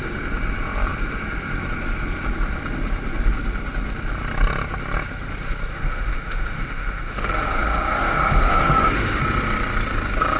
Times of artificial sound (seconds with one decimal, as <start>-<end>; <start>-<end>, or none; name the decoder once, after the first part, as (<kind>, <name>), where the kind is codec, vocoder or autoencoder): 5.7-9.2 (autoencoder, DAC-VAE)